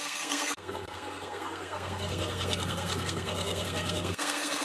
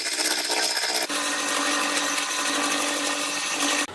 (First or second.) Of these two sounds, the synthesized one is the first